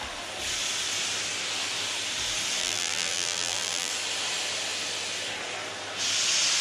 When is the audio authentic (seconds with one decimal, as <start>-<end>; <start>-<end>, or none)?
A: 0.0-2.6; 3.9-6.6